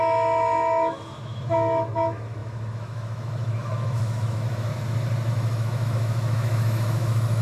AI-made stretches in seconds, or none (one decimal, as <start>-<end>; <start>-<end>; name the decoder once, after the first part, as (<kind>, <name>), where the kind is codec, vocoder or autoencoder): 0.0-4.7 (autoencoder, DAC-VAE); 5.3-7.4